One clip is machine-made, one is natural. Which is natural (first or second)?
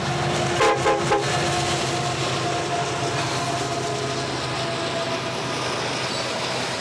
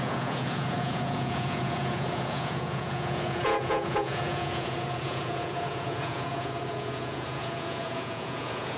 first